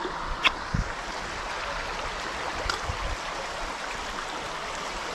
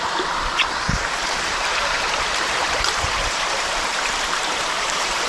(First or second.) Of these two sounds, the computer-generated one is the second